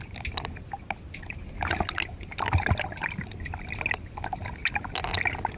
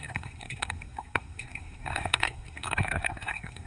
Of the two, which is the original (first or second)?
first